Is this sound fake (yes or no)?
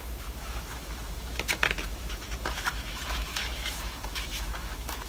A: yes